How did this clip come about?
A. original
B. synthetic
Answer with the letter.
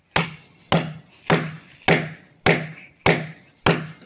A